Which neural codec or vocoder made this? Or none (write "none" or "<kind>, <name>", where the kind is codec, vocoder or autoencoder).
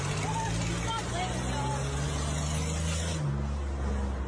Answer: none